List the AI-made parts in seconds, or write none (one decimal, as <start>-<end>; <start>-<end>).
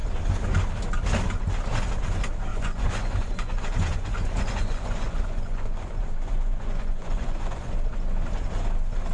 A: 2.5-7.7